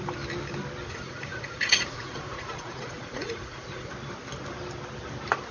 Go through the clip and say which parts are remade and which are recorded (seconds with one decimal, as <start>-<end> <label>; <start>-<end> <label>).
0.0-0.9 recorded; 0.9-3.9 remade; 3.9-5.5 recorded